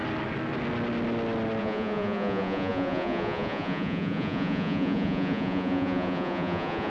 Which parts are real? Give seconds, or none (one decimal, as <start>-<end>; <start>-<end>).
0.0-1.6